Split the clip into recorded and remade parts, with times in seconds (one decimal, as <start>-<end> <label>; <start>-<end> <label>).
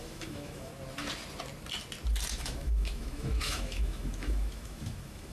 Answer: 0.0-0.7 remade; 0.7-2.3 recorded; 2.3-5.3 remade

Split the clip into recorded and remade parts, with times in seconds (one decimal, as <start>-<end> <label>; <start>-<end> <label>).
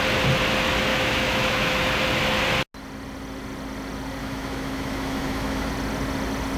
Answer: 0.0-0.9 recorded; 0.9-1.8 remade; 1.8-4.2 recorded; 4.2-5.7 remade; 5.7-6.6 recorded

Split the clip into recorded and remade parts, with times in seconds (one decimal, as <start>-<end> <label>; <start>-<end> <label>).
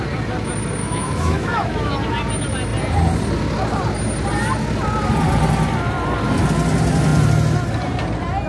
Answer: 0.0-0.8 recorded; 0.8-1.9 remade; 1.9-8.5 recorded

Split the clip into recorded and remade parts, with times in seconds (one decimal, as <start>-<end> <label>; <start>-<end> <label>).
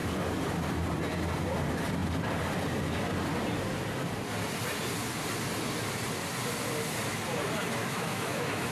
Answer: 0.0-7.8 recorded; 7.8-8.7 remade